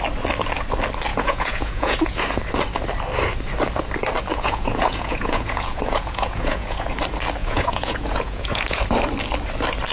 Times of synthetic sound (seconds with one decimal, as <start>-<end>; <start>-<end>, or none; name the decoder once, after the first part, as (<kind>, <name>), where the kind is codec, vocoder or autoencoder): 1.1-2.2 (vocoder, Vocos); 4.3-6.9; 7.4-8.8